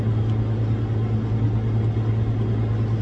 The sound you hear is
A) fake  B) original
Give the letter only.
B